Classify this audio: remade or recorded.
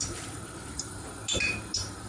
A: remade